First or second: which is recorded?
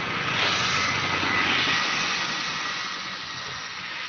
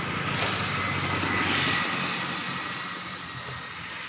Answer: second